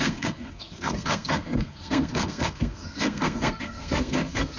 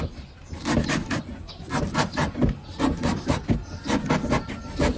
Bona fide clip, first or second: second